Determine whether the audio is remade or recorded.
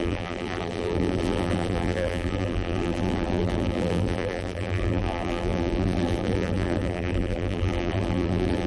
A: remade